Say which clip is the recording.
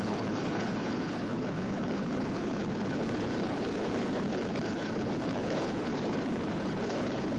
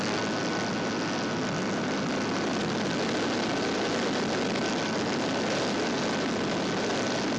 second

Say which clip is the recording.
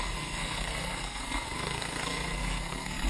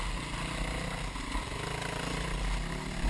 second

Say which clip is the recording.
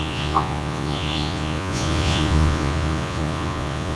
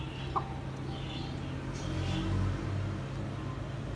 second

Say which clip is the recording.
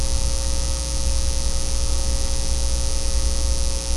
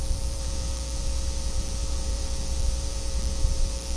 first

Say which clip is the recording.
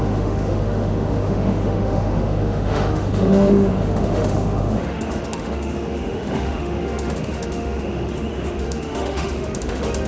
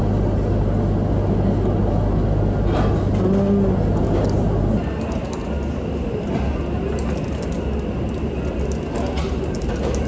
second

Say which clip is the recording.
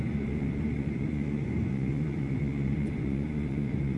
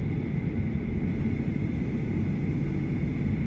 second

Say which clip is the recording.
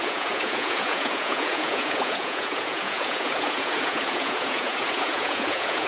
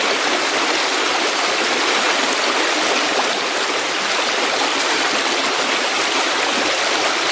second